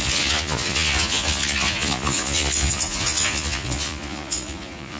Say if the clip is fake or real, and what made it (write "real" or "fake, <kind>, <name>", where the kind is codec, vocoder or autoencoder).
fake, vocoder, Vocos